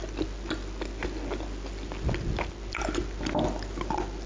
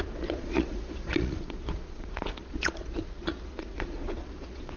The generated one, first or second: second